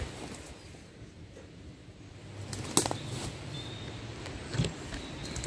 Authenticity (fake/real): real